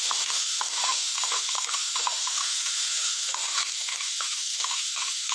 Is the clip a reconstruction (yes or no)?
yes